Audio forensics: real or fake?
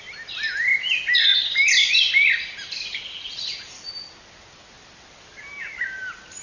real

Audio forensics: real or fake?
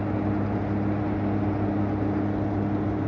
real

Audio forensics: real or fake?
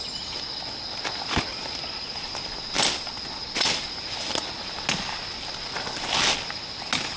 real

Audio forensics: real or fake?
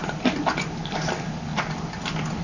real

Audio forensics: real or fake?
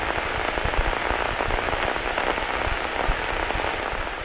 real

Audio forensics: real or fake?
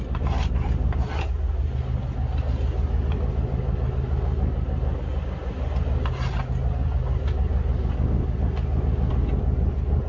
real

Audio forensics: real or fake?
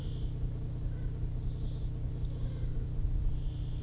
real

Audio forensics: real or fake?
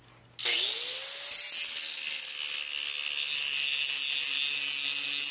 real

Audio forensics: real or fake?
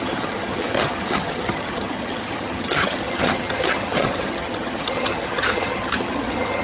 fake